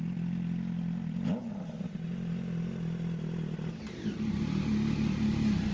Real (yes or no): yes